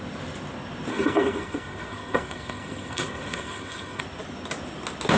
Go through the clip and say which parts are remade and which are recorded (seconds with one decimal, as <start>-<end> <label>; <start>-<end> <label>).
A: 0.0-0.9 recorded; 0.9-4.0 remade; 4.0-5.2 recorded